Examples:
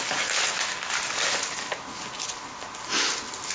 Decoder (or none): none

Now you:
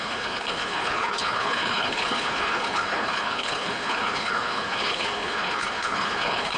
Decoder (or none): codec, HILCodec